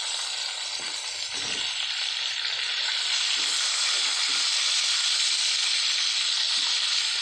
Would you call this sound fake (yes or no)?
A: no